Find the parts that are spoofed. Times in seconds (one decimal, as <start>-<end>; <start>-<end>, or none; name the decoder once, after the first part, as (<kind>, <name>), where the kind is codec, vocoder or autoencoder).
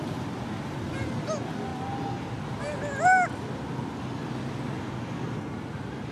none